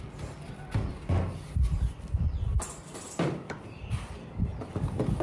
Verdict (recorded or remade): recorded